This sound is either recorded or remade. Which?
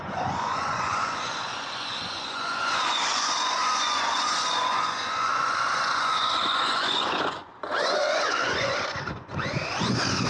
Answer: remade